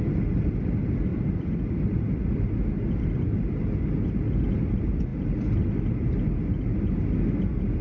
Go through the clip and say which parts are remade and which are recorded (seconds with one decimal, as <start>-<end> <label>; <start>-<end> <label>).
0.0-1.1 recorded; 1.1-4.1 remade; 4.1-7.8 recorded